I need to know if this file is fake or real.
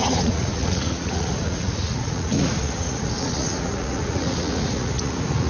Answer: fake